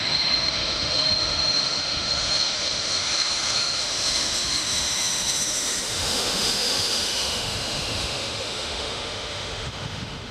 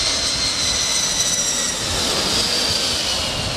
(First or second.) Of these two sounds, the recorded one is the second